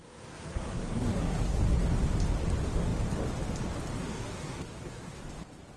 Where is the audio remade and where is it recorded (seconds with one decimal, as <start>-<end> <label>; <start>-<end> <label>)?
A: 0.0-1.6 remade; 1.6-4.0 recorded; 4.0-5.2 remade; 5.2-5.8 recorded